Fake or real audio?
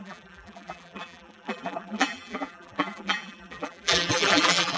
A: fake